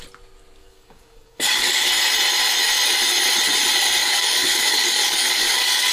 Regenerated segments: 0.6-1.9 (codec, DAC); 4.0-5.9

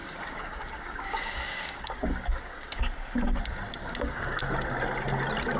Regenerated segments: 0.0-2.8 (codec, DAC); 3.8-4.4

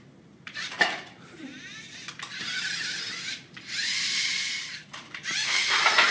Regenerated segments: 0.0-1.5 (vocoder, BigVGAN v2); 3.9-6.1

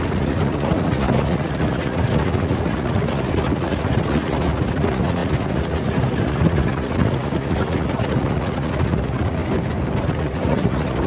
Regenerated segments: 0.0-9.4 (vocoder, Vocos); 10.0-11.1

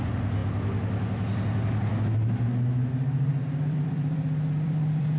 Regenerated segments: 0.0-0.4 (vocoder, BigVGAN v2); 2.9-5.2

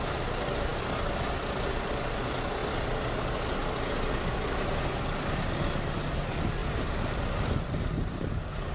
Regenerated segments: 6.6-8.7 (vocoder, BigVGAN v2)

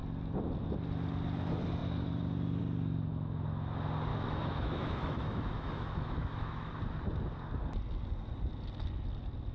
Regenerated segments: 4.1-6.7 (autoencoder, DAC-VAE)